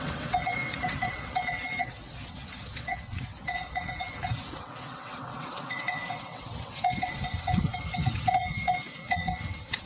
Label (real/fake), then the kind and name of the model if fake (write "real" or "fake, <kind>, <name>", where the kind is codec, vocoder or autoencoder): fake, vocoder, WaveNeXt